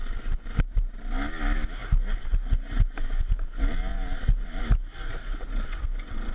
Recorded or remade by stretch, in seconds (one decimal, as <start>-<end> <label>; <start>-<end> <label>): 0.0-6.3 recorded

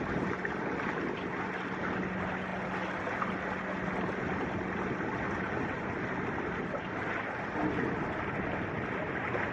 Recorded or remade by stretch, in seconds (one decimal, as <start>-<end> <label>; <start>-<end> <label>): 0.0-9.5 recorded